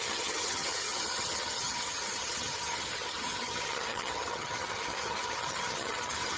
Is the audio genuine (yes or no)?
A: no